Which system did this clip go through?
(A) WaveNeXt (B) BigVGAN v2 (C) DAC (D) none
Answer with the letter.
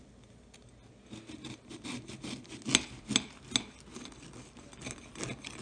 D